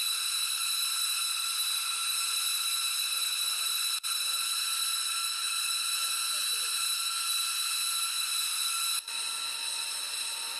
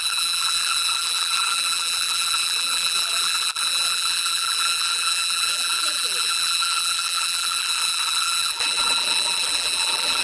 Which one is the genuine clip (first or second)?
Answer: first